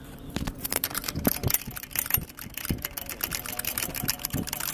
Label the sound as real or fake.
fake